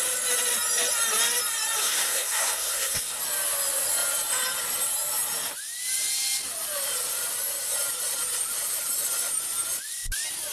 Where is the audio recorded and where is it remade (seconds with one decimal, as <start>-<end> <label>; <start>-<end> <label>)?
0.0-1.8 recorded; 1.8-3.2 remade; 3.2-10.5 recorded